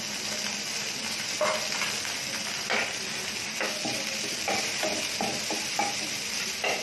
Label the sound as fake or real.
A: real